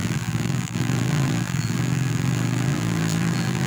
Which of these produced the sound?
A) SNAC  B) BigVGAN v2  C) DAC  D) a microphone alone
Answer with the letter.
B